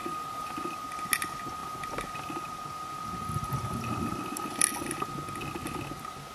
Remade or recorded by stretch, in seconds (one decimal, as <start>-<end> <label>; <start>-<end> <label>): 0.0-6.3 recorded